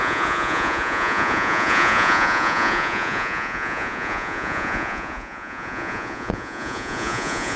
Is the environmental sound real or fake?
fake